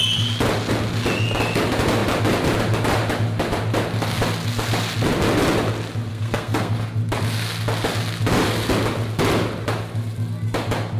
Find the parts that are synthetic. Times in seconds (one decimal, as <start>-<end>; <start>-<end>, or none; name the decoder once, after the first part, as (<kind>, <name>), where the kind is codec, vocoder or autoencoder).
6.1-6.7 (codec, SNAC)